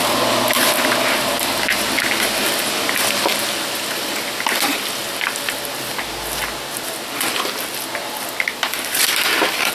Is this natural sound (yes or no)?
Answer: yes